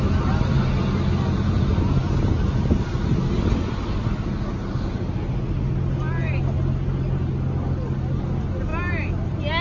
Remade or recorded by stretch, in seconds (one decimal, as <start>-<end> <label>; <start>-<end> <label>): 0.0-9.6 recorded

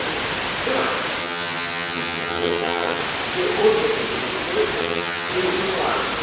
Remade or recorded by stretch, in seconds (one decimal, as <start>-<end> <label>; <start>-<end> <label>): 0.0-1.2 recorded; 1.2-3.0 remade; 3.0-4.8 recorded; 4.8-5.3 remade; 5.3-6.2 recorded

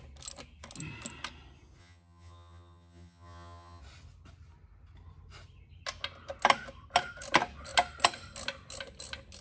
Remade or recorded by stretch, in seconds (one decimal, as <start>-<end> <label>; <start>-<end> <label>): 0.0-1.8 recorded; 1.8-3.8 remade; 3.8-9.4 recorded

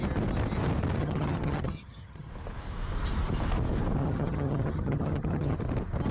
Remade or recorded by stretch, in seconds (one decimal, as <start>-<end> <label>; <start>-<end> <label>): 0.0-1.0 recorded; 1.0-2.3 remade; 2.3-4.0 recorded; 4.0-5.6 remade; 5.6-6.1 recorded

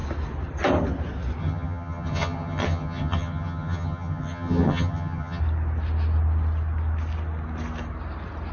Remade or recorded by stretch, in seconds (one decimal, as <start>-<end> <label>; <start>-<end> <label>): 0.0-1.4 recorded; 1.4-5.4 remade; 5.4-8.5 recorded

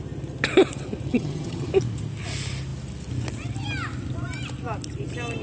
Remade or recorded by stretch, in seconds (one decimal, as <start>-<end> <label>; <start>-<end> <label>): 0.0-1.1 recorded; 1.1-1.7 remade; 1.7-5.4 recorded

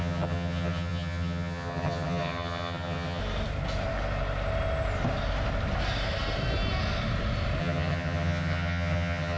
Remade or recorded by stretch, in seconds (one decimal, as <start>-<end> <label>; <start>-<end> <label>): 0.0-3.2 remade; 3.2-7.6 recorded; 7.6-9.4 remade

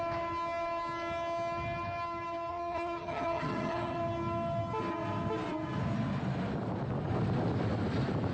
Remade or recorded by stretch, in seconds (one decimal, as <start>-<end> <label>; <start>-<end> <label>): 0.0-2.5 recorded; 2.5-4.0 remade; 4.0-8.3 recorded